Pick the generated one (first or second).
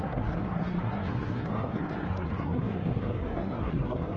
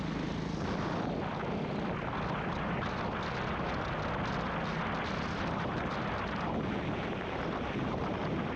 first